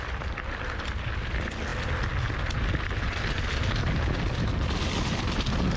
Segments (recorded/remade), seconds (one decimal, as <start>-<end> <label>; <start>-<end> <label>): 0.0-5.8 recorded